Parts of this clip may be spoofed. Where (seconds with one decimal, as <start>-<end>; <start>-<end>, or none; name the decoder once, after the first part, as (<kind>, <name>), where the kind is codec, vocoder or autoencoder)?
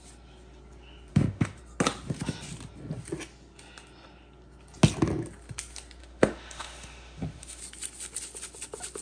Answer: 1.1-1.6 (autoencoder, DAC-VAE); 6.0-7.6